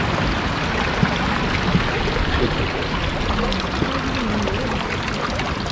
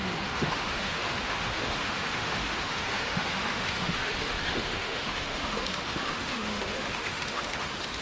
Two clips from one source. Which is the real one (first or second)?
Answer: first